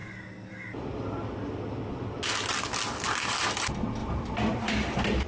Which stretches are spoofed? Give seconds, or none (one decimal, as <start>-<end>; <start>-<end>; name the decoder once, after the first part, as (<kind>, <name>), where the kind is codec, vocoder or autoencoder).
4.0-5.3 (vocoder, BigVGAN v2)